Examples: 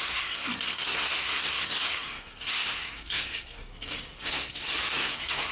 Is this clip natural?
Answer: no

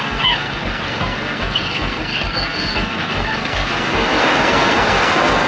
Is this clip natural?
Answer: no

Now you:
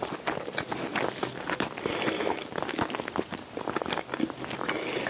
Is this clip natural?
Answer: yes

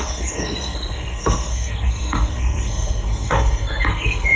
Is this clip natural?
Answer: no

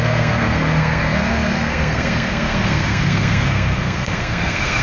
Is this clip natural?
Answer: no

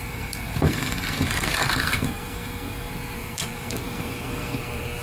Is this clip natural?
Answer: no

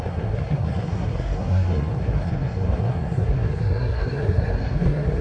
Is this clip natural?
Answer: no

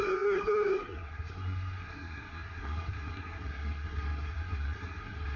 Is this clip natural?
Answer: no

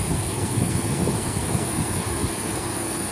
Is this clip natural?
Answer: no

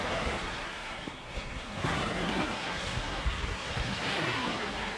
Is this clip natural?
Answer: no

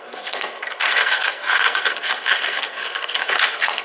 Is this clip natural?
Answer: no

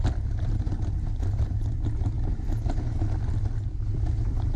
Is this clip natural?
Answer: yes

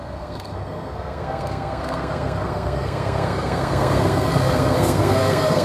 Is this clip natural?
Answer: no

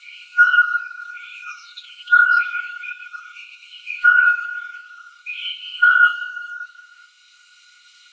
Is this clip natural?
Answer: no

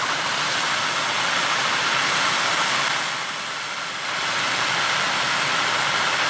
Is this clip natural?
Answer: yes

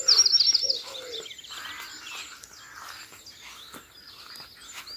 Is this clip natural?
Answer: yes